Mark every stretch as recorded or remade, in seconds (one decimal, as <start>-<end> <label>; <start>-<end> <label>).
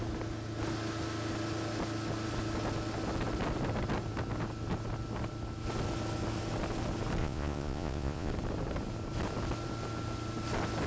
0.0-7.2 recorded; 7.2-8.3 remade; 8.3-10.9 recorded